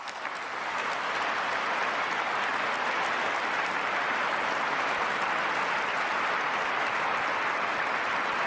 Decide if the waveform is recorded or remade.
recorded